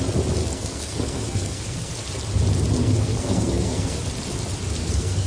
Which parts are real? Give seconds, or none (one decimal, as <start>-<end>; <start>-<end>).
0.0-0.4; 1.9-2.8; 4.0-4.8